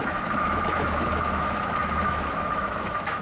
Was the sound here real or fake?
fake